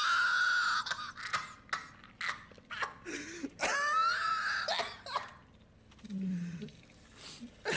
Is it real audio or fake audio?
real